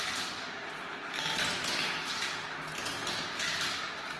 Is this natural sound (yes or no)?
yes